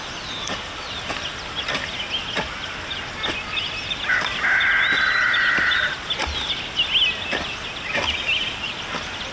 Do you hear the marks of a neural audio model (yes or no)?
no